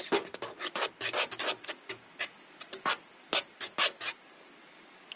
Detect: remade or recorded recorded